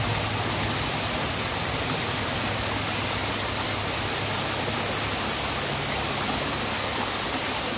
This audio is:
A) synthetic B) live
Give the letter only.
B